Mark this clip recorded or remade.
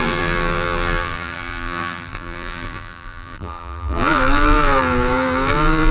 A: remade